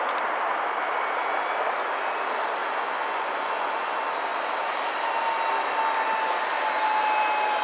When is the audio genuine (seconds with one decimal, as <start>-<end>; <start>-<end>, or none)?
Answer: 0.0-2.6; 3.9-7.6